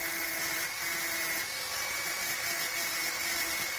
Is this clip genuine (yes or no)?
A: yes